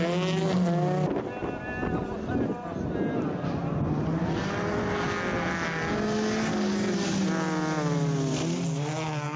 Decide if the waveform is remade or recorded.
recorded